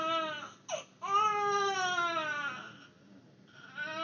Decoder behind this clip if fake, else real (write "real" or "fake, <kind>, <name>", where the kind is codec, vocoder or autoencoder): real